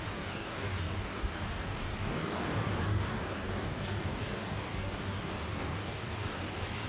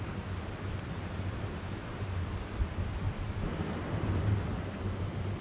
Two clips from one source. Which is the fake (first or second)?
first